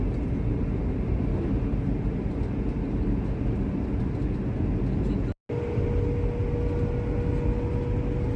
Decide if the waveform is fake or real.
real